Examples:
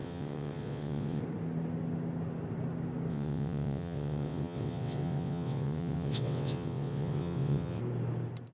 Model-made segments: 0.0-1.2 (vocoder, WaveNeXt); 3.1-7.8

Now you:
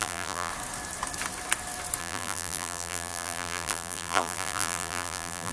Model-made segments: 0.0-0.5 (vocoder, BigVGAN v2); 2.0-5.5

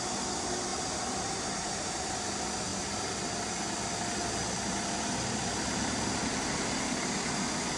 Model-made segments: 0.7-2.2 (vocoder, BigVGAN v2); 2.7-3.3

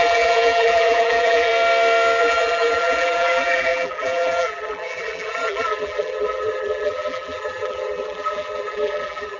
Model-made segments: 0.0-1.5 (vocoder, BigVGAN v2); 2.2-9.4

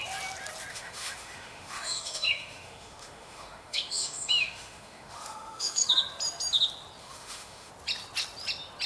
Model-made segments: 0.7-5.9 (autoencoder, DAC-VAE); 7.0-7.7

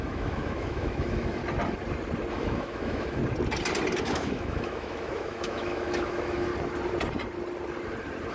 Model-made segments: 0.0-1.4 (autoencoder, DAC-VAE); 2.3-3.2; 4.0-6.5

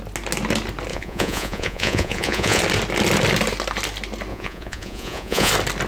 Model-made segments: 0.9-2.6 (vocoder, Vocos); 4.3-5.5